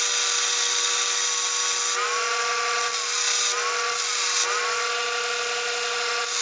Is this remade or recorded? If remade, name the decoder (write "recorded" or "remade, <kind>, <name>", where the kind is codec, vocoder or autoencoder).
recorded